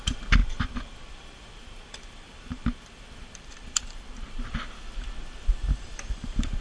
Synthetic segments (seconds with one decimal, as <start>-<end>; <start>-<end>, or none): 0.4-4.4